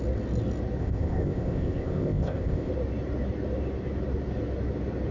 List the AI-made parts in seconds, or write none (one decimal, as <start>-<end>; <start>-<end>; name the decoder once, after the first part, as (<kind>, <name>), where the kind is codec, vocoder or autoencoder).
0.8-2.7 (codec, ZipCodec)